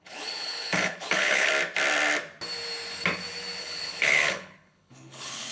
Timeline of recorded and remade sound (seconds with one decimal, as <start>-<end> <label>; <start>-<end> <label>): 0.0-1.5 remade; 1.5-3.6 recorded; 3.6-5.5 remade